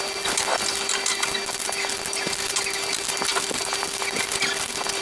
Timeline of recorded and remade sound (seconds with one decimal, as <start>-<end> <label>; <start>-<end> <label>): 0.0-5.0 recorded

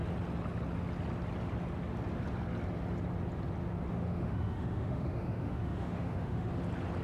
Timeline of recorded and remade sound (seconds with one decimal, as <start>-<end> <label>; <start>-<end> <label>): 0.0-3.9 recorded; 3.9-6.5 remade; 6.5-7.0 recorded

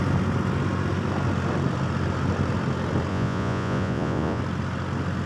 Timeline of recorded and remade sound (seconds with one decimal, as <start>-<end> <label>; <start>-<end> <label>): 0.0-3.1 recorded; 3.1-4.4 remade; 4.4-5.3 recorded